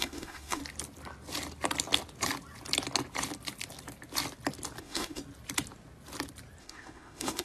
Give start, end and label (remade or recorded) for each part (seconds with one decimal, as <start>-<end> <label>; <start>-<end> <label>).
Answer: 0.0-0.6 remade; 0.6-4.8 recorded; 4.8-5.2 remade; 5.2-6.6 recorded; 6.6-7.4 remade